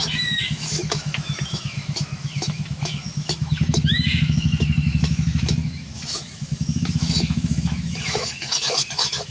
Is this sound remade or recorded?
remade